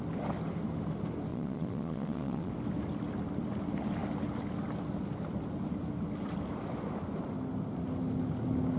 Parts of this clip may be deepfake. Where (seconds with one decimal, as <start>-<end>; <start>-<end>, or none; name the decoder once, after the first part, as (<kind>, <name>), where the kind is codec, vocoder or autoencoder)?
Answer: 1.3-2.5 (vocoder, Vocos)